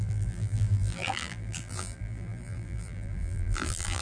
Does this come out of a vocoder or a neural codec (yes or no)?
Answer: yes